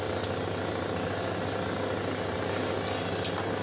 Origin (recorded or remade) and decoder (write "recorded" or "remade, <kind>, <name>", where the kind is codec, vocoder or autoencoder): recorded